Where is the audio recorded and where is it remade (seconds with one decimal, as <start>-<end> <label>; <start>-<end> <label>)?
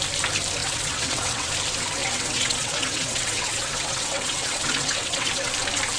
0.0-0.6 recorded; 0.6-1.5 remade; 1.5-2.0 recorded; 2.0-5.5 remade; 5.5-6.0 recorded